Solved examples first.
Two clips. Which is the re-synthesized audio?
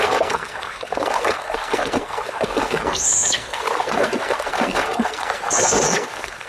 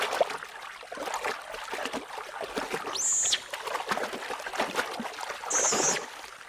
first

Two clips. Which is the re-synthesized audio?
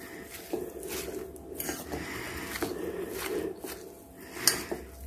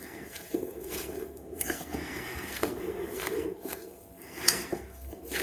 second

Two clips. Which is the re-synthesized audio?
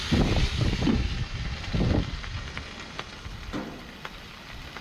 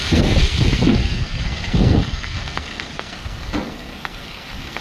second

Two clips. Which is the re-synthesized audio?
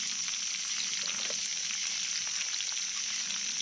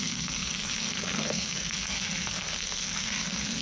second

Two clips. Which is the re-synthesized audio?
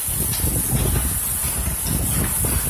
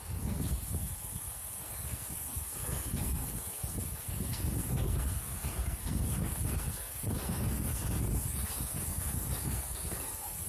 second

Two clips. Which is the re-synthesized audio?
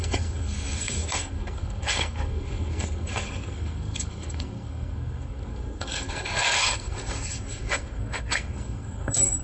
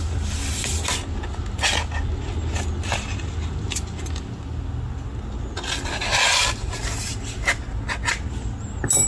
first